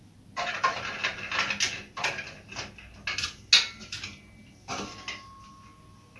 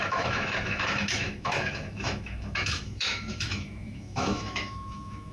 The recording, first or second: first